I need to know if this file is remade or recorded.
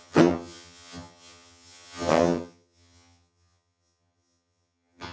remade